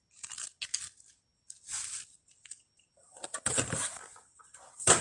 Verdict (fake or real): real